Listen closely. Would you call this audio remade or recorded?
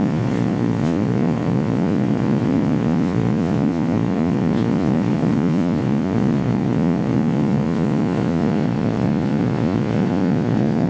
remade